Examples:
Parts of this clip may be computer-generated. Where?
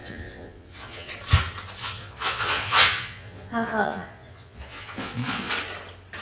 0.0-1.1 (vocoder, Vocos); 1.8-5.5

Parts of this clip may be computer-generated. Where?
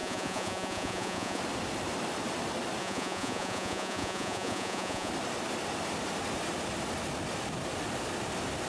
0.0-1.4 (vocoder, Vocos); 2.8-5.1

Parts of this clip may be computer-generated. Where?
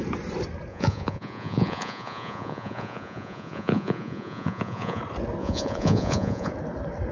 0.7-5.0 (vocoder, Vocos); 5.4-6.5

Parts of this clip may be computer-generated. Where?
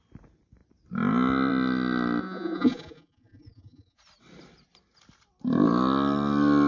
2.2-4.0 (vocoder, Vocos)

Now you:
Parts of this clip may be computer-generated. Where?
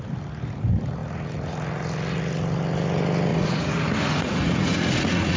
3.3-5.4 (vocoder, Vocos)